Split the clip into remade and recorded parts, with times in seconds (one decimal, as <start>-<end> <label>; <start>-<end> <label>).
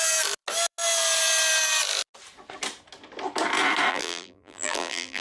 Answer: 0.0-3.9 recorded; 3.9-5.2 remade